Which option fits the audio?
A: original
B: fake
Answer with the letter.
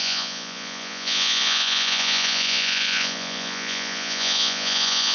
B